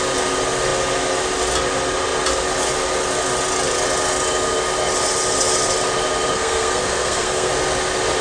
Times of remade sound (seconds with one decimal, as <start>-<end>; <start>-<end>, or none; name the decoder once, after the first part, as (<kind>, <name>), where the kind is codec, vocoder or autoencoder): 6.3-7.5 (codec, SNAC)